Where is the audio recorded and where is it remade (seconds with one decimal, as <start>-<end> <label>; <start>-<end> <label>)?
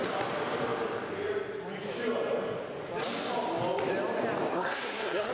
0.0-4.5 recorded; 4.5-5.3 remade